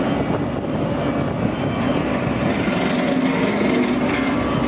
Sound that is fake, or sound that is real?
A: real